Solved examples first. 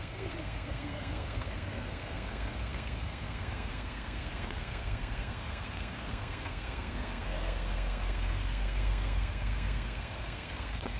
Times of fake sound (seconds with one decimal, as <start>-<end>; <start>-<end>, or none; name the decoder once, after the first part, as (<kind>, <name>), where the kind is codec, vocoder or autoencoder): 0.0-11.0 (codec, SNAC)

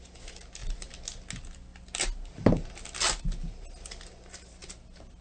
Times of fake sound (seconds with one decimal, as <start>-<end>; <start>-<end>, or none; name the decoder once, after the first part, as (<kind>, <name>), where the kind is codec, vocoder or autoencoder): none

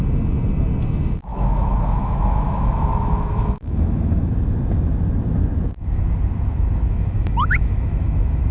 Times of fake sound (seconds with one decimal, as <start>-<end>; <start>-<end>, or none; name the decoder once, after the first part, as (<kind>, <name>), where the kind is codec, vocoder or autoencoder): 1.3-4.3 (autoencoder, DAC-VAE); 6.9-8.5

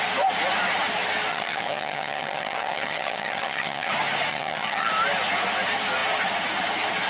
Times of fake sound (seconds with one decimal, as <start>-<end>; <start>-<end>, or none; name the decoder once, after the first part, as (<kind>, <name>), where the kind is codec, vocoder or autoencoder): 1.3-3.9 (vocoder, HiFi-GAN); 4.3-4.9

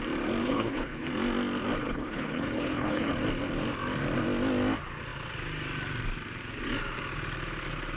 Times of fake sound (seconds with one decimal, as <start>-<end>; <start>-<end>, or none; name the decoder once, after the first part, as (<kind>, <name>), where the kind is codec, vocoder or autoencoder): 0.4-1.1 (codec, HILCodec); 1.8-3.1

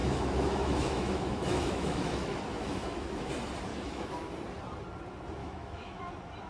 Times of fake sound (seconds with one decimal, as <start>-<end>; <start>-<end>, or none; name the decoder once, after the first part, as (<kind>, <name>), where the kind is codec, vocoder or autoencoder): 0.0-3.3 (autoencoder, DAC-VAE); 3.7-4.3; 5.4-6.0